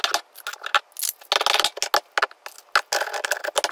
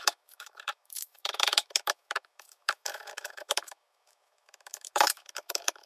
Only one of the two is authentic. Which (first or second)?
first